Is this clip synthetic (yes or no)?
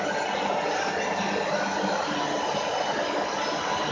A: no